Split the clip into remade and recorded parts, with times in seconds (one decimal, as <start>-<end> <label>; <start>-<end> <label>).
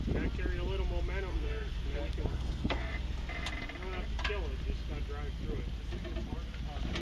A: 0.0-1.3 recorded; 1.3-1.8 remade; 1.8-2.3 recorded; 2.3-2.9 remade; 2.9-7.0 recorded